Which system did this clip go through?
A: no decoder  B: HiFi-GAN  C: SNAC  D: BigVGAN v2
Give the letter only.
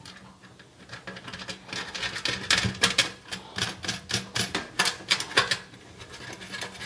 A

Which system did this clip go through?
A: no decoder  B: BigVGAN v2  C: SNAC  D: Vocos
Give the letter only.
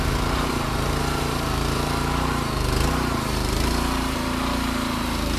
B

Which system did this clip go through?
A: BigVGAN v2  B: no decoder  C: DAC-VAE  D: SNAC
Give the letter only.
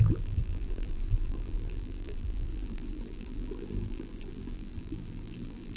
A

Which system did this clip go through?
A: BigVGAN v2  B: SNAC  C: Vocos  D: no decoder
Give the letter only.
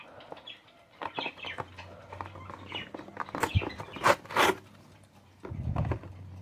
D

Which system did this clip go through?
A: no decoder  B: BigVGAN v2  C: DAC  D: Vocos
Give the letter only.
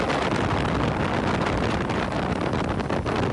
B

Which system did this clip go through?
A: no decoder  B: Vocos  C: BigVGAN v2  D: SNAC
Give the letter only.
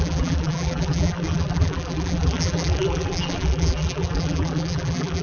C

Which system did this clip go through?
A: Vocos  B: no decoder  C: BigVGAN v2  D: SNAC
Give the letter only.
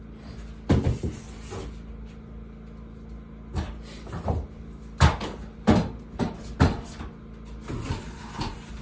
B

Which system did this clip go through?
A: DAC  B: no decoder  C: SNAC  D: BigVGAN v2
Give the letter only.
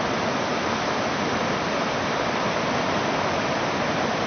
D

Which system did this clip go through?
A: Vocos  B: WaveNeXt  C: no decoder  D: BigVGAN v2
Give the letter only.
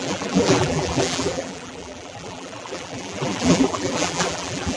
D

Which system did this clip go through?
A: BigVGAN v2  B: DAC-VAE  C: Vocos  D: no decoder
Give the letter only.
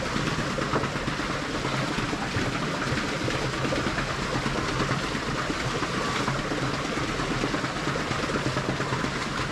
D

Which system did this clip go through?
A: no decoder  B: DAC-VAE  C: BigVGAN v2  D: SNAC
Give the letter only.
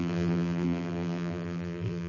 C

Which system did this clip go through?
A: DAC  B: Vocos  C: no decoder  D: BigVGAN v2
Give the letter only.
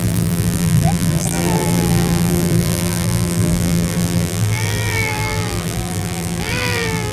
D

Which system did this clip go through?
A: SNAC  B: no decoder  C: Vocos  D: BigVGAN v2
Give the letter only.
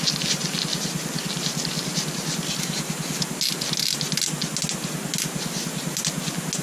B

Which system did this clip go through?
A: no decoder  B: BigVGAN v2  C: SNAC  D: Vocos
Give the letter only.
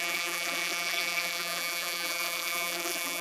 B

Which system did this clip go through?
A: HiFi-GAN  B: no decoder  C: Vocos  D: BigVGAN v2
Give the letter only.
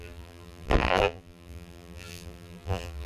D